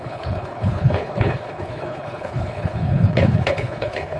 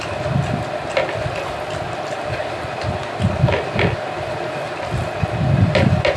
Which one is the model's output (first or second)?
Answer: first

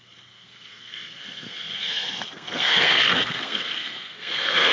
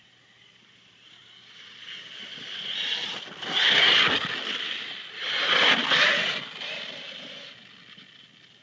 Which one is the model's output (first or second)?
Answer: first